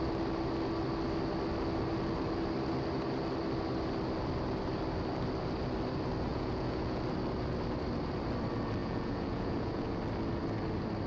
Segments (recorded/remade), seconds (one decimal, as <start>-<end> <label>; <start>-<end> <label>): 0.0-6.3 recorded; 6.3-7.0 remade; 7.0-8.8 recorded; 8.8-10.0 remade; 10.0-11.1 recorded